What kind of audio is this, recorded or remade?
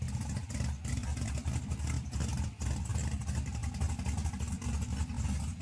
recorded